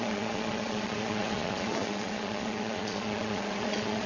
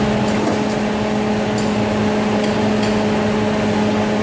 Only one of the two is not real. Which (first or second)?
first